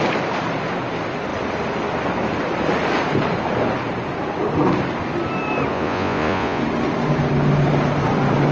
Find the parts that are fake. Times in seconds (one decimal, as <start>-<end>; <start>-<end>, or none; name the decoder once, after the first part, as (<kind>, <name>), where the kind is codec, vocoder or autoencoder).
5.7-6.6 (vocoder, Vocos)